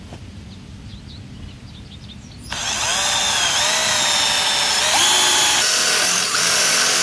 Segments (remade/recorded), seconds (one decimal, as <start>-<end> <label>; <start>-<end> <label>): 0.0-0.9 remade; 0.9-3.2 recorded; 3.2-3.8 remade; 3.8-5.3 recorded; 5.3-7.0 remade